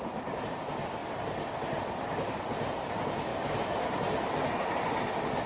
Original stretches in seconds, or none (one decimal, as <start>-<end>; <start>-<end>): 0.0-5.5